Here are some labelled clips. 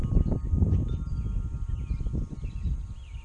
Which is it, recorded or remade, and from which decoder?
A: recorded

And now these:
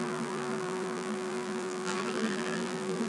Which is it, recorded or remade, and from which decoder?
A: remade, vocoder, BigVGAN v2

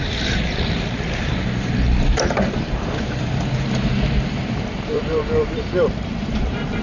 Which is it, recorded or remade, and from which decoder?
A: remade, vocoder, BigVGAN v2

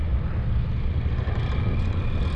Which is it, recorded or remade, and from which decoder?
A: recorded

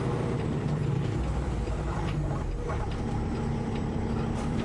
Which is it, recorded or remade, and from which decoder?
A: remade, vocoder, BigVGAN v2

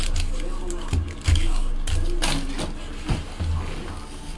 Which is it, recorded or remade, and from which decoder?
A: recorded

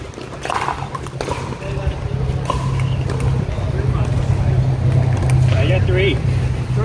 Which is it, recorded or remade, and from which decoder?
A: recorded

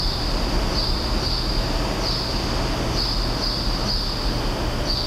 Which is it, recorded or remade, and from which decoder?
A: recorded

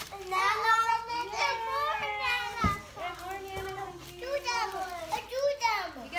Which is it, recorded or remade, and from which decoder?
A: recorded